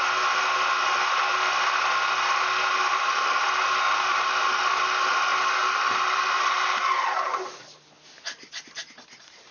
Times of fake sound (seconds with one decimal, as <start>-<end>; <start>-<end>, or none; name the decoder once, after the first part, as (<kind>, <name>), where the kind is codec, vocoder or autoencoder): none